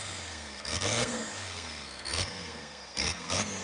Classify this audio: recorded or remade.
remade